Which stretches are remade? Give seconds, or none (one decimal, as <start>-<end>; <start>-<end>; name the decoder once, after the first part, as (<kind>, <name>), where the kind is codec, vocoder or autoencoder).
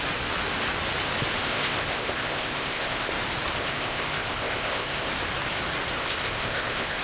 1.4-3.1 (codec, ZipCodec); 3.6-5.1; 6.0-7.0